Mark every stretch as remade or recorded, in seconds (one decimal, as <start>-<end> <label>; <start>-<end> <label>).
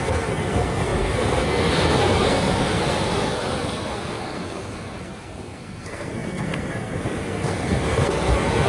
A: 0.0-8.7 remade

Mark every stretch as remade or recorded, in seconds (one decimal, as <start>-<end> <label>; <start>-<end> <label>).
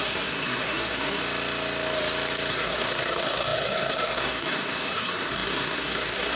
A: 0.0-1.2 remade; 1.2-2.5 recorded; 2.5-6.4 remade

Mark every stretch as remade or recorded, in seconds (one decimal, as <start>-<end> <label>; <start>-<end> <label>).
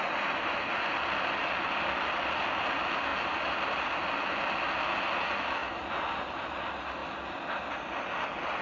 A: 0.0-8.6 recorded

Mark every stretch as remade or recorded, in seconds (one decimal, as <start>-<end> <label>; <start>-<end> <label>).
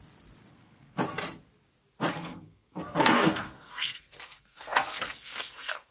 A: 0.0-0.5 recorded; 0.5-1.0 remade; 1.0-2.1 recorded; 2.1-5.9 remade